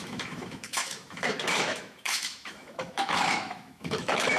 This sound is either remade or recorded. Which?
remade